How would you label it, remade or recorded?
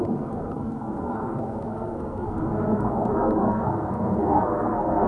remade